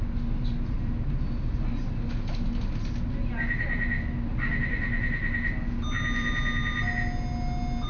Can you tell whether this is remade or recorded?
recorded